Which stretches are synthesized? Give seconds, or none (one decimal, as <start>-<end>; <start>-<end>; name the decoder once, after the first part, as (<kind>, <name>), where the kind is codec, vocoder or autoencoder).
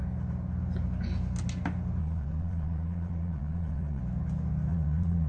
2.0-4.0 (vocoder, Vocos); 4.7-5.3